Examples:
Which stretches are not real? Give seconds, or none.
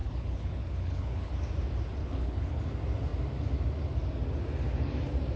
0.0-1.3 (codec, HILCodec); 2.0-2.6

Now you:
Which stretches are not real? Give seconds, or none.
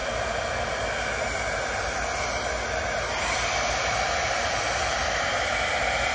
none